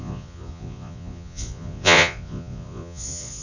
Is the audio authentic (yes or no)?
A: no